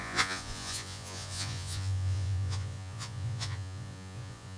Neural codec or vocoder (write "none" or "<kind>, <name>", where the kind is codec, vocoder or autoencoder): vocoder, Vocos